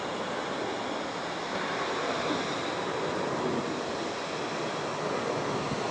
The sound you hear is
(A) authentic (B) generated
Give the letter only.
A